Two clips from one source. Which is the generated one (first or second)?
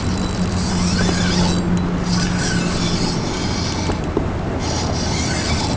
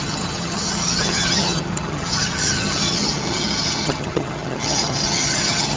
second